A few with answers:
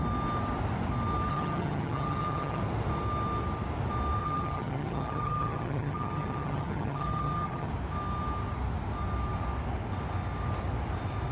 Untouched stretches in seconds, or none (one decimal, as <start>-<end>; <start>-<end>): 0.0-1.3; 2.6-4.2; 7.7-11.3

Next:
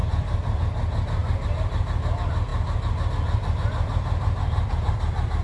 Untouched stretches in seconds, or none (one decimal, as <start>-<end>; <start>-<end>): 0.6-1.2; 1.7-3.9; 5.0-5.4

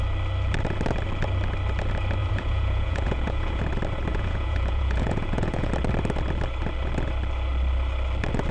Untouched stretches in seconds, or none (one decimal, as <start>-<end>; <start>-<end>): 0.0-2.2; 3.6-4.1; 5.7-8.5

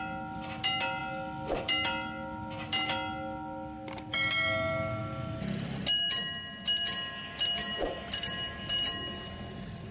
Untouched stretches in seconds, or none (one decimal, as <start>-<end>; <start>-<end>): 0.0-9.9